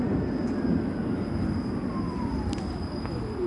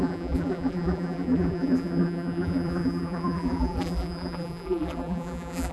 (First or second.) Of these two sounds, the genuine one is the first